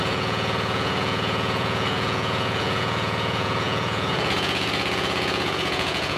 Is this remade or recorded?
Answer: remade